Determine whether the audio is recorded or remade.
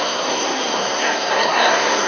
remade